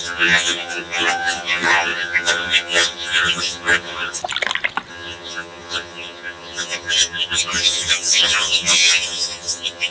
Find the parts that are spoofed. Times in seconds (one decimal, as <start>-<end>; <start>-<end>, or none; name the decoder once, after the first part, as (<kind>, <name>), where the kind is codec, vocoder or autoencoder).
0.0-4.2 (vocoder, HiFi-GAN); 4.9-9.9